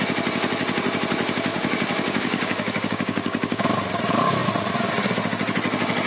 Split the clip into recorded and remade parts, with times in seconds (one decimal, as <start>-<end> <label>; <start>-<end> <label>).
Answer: 0.0-1.5 recorded; 1.5-3.6 remade; 3.6-6.1 recorded